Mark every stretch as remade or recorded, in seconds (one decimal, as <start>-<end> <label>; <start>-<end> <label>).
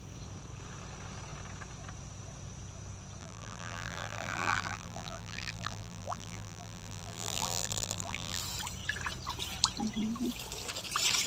0.0-3.2 recorded; 3.2-8.4 remade; 8.4-11.3 recorded